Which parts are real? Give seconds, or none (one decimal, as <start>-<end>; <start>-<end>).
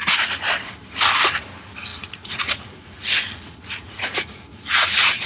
0.0-1.9